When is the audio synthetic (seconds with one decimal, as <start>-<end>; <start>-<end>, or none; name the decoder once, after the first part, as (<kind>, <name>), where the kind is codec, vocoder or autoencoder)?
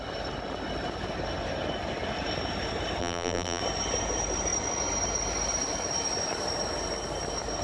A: 3.0-3.6 (vocoder, BigVGAN v2)